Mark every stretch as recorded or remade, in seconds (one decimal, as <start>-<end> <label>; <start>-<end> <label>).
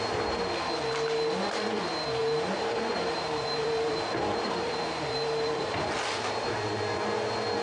0.0-2.2 recorded; 2.2-6.8 remade; 6.8-7.6 recorded